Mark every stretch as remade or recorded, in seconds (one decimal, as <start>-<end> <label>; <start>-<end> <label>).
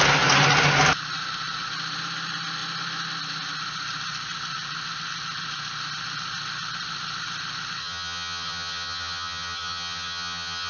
0.0-7.8 recorded; 7.8-10.7 remade